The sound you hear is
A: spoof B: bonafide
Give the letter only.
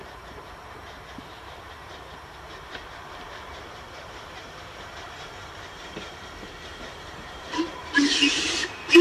A